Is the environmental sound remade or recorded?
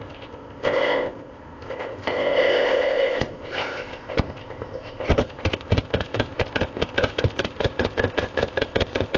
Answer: remade